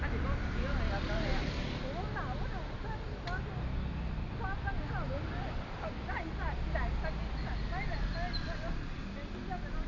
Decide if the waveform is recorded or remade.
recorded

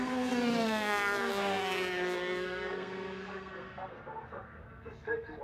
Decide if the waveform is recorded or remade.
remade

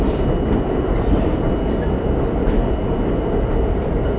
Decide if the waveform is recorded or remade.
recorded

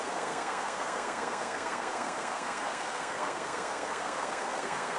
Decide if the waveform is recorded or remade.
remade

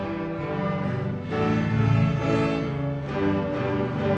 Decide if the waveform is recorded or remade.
recorded